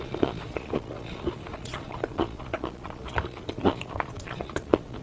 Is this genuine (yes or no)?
no